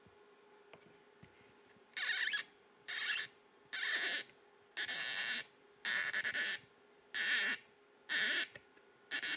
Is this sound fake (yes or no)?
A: no